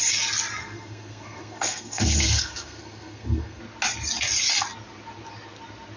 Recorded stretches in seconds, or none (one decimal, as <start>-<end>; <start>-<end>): 0.0-0.6; 3.6-6.0